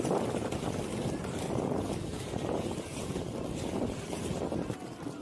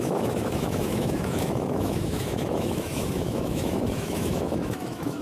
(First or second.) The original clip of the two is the first